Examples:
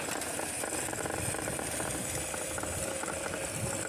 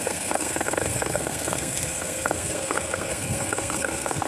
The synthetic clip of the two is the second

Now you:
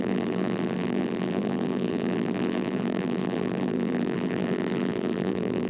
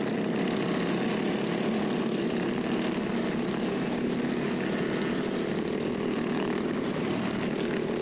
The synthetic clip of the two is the first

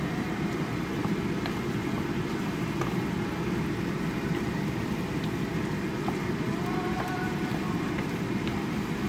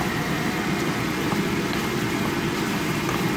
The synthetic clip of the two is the first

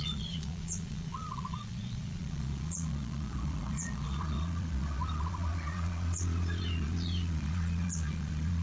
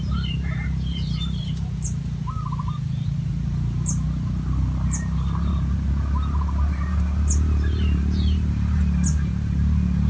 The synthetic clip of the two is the first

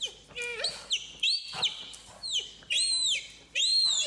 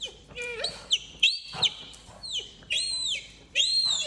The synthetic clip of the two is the second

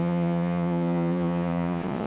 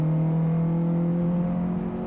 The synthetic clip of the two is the first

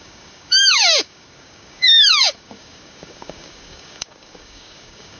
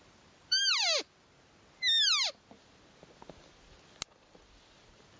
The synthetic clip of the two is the first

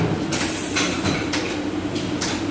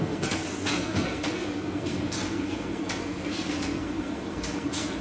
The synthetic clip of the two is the second